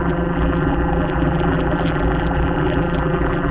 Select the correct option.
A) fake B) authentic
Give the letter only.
A